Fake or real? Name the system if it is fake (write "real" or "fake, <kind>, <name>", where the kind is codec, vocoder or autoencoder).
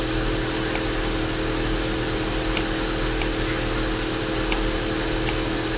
real